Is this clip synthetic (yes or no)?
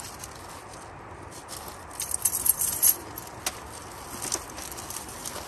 no